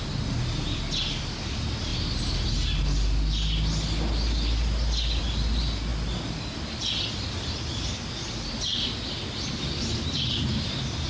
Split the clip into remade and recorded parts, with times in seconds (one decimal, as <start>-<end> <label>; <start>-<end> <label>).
0.0-11.1 recorded